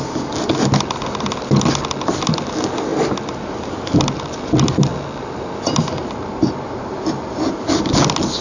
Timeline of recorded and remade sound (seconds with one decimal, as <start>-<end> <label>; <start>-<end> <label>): 0.0-6.0 recorded; 6.0-7.7 remade; 7.7-8.4 recorded